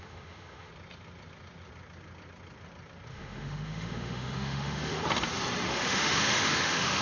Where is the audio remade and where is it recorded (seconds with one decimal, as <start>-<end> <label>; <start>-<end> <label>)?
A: 0.0-0.7 remade; 0.7-3.1 recorded; 3.1-5.0 remade; 5.0-5.7 recorded; 5.7-7.0 remade